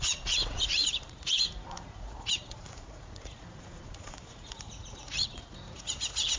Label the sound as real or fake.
fake